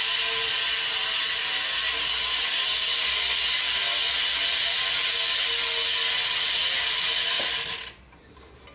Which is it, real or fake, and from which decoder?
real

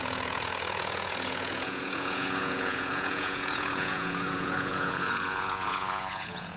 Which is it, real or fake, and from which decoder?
fake, vocoder, Vocos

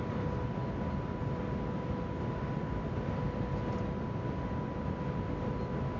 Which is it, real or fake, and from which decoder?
real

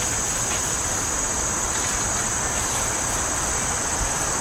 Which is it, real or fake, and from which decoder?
real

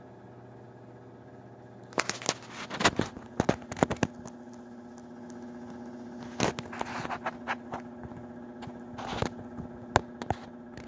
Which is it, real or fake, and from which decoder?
real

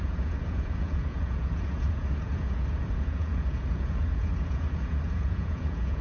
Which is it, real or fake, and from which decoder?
fake, vocoder, Vocos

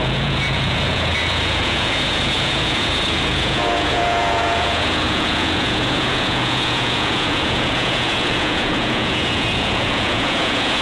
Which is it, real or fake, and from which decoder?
fake, vocoder, Vocos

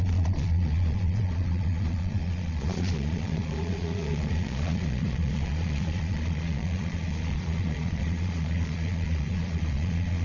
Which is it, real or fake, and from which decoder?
fake, vocoder, Vocos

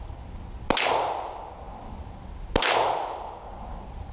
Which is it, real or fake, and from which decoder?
real